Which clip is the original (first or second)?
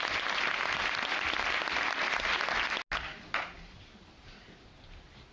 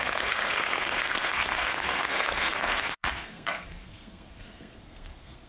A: first